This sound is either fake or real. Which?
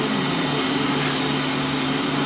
real